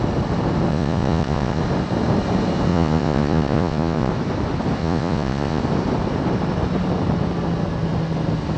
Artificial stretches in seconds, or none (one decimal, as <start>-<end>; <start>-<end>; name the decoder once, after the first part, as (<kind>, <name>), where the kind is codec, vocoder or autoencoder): 0.7-1.6 (vocoder, Vocos); 2.7-4.1; 4.8-5.6